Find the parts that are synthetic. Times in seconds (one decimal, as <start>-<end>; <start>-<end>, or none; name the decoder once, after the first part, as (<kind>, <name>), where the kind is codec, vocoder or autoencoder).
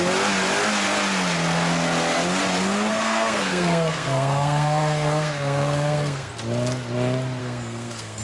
2.9-6.3 (codec, SNAC); 7.4-8.2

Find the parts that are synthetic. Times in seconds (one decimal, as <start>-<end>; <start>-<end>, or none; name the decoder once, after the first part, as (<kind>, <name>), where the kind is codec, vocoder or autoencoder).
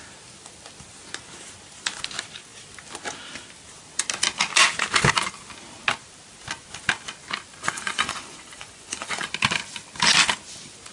7.6-9.3 (vocoder, Vocos)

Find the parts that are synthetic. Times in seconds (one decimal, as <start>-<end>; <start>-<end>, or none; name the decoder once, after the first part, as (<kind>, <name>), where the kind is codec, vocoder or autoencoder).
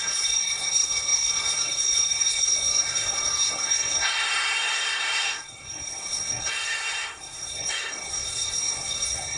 0.0-9.4 (codec, SNAC)